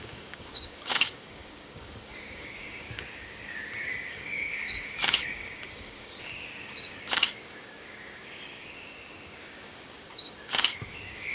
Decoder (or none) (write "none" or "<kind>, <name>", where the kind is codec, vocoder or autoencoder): codec, DAC